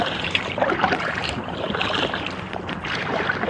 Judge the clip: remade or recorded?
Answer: remade